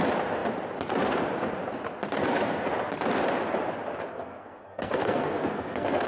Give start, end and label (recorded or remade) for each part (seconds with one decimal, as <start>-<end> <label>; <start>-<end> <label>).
0.0-2.2 recorded; 2.2-2.7 remade; 2.7-4.1 recorded; 4.1-6.1 remade